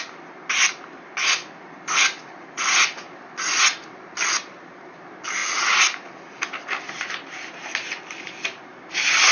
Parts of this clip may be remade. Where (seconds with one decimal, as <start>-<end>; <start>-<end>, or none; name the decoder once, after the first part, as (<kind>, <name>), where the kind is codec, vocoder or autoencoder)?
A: none